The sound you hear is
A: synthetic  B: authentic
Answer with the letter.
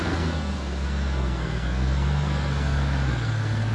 A